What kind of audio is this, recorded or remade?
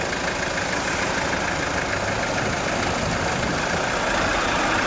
recorded